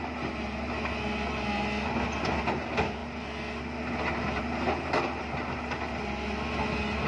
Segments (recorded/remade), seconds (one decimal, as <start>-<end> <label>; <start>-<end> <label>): 0.0-7.1 recorded